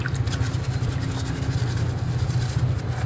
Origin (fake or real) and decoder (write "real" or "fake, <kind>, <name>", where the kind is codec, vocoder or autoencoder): real